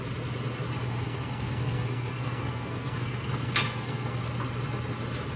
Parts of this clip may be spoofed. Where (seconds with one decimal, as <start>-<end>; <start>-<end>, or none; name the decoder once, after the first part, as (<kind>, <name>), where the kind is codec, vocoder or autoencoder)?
1.0-4.2 (codec, SNAC)